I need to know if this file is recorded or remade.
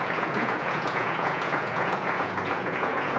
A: remade